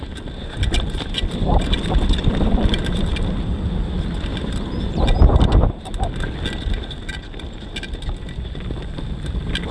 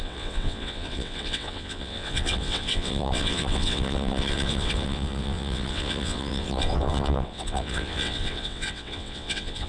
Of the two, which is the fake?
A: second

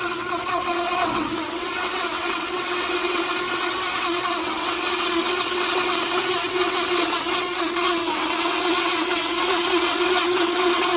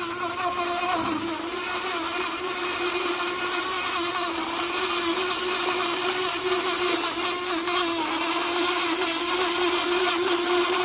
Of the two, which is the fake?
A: first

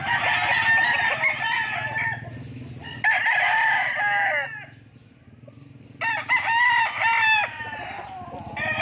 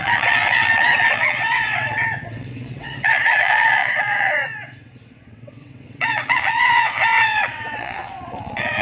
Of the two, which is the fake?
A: second